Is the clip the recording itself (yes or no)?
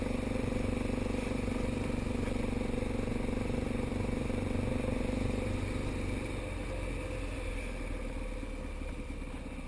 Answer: yes